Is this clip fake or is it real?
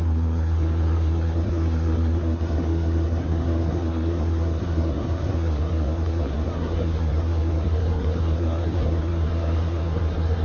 fake